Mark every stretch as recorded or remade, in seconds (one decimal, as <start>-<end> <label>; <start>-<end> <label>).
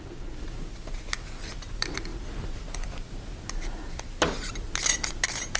0.0-5.6 recorded